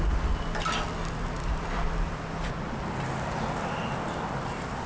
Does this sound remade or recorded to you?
recorded